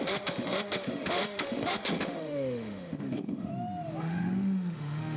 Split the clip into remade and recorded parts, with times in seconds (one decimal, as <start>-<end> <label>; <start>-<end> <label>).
0.0-3.5 remade; 3.5-4.0 recorded; 4.0-5.2 remade